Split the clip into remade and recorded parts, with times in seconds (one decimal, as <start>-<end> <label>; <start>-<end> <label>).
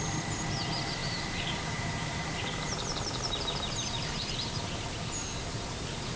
0.0-1.0 recorded; 1.0-4.6 remade; 4.6-6.2 recorded